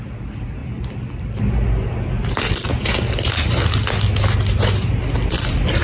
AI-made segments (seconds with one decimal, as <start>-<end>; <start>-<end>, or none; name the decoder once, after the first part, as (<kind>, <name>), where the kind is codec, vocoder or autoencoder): 0.6-1.5 (vocoder, BigVGAN v2)